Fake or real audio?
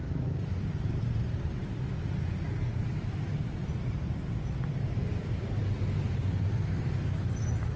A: real